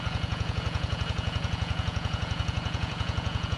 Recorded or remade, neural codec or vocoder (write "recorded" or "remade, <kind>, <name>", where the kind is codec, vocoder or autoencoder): remade, vocoder, Vocos